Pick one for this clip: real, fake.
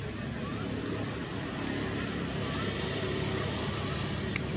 fake